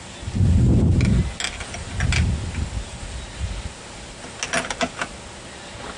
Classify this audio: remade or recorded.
recorded